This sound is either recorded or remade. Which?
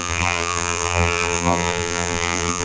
remade